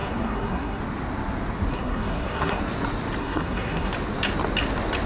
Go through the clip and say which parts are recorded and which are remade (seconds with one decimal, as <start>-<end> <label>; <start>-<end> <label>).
0.0-0.8 remade; 0.8-1.7 recorded; 1.7-2.6 remade; 2.6-3.2 recorded; 3.2-3.9 remade; 3.9-5.1 recorded